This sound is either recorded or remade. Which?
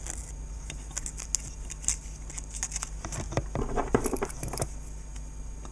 recorded